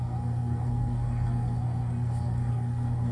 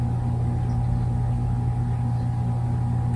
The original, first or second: second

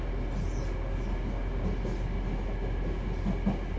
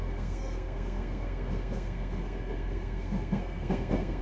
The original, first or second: first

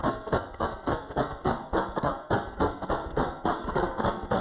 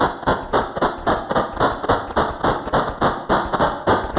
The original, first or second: second